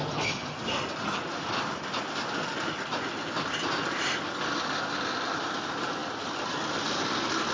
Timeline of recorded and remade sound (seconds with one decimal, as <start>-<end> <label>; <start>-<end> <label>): 0.0-7.5 recorded